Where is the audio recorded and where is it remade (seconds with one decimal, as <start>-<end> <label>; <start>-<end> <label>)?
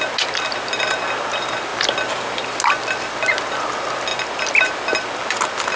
0.0-5.8 recorded